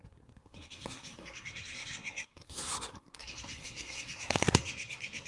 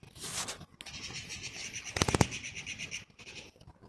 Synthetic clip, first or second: first